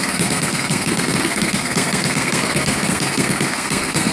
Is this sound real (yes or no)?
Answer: no